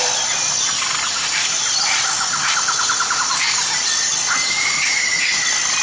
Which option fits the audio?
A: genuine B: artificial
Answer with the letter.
A